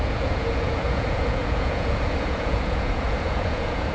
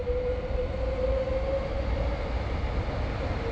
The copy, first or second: first